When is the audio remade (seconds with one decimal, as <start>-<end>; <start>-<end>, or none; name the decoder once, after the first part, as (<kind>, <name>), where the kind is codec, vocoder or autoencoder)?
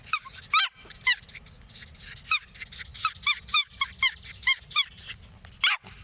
none